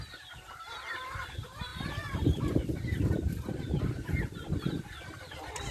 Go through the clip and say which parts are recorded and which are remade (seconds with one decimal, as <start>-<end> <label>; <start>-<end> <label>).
0.0-5.7 remade